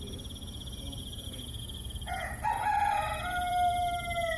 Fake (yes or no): yes